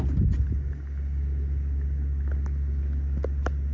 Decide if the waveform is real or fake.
real